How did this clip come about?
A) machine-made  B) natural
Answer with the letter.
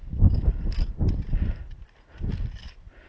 B